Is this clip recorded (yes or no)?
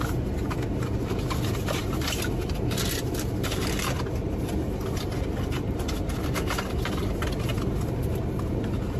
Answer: yes